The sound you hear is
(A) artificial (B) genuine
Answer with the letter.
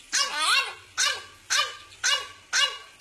B